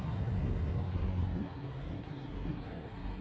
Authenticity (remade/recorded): remade